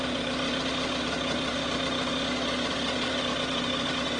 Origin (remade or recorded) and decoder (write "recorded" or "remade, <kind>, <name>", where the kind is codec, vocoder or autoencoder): recorded